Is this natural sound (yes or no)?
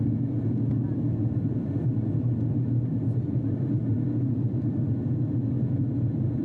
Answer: no